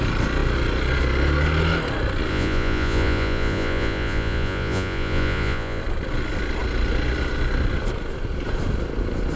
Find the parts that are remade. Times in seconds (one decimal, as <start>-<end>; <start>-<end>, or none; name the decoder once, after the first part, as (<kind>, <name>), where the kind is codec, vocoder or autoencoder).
2.3-5.8 (vocoder, Vocos)